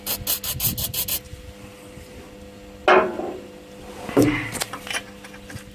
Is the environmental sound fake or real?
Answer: real